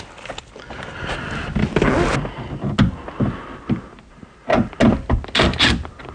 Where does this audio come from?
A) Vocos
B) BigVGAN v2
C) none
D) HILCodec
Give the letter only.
C